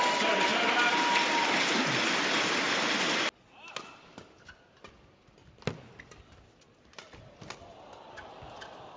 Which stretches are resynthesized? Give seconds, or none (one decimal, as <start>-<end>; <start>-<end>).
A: 0.5-1.3